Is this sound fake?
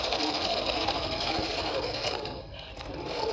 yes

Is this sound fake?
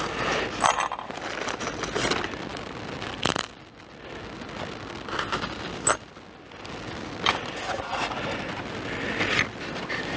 no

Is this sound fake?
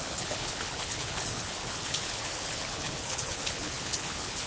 yes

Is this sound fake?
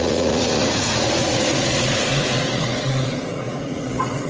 yes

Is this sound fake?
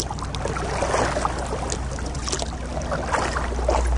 no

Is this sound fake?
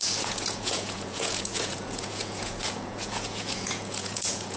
yes